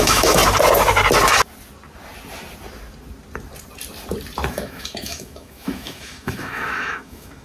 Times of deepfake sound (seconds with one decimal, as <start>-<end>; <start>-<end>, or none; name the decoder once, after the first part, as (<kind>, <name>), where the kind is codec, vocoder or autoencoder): 0.0-0.4 (autoencoder, DAC-VAE); 4.5-7.4